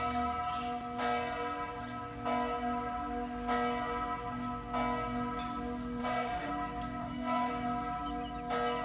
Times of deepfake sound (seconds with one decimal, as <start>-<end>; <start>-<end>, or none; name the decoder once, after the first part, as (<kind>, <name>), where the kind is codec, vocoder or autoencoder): 6.0-6.5 (autoencoder, DAC-VAE); 7.0-7.5